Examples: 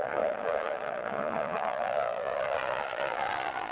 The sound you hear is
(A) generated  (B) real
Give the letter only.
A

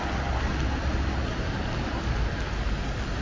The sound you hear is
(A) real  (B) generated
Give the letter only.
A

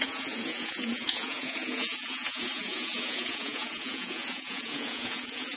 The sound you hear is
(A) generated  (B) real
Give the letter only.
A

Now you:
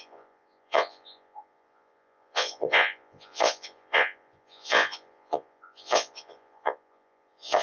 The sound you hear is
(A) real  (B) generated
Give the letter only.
B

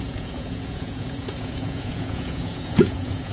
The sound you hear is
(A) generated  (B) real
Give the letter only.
A